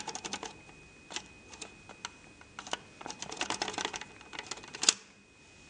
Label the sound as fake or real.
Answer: real